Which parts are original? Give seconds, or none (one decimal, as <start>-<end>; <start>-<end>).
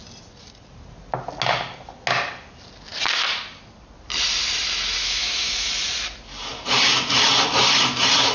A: 0.0-5.0; 5.7-8.3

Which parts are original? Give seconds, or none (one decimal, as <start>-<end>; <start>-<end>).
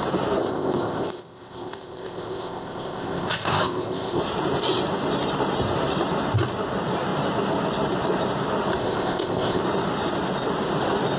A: 0.0-0.4; 4.2-8.8; 9.6-11.2